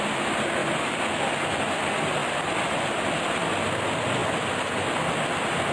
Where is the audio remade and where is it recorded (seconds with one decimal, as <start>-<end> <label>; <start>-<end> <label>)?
0.0-5.7 recorded